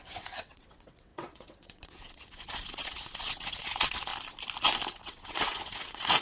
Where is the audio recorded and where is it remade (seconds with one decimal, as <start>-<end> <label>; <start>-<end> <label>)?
0.0-4.1 remade; 4.1-4.9 recorded; 4.9-6.2 remade